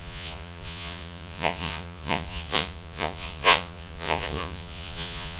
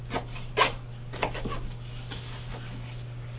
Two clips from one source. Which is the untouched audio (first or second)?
second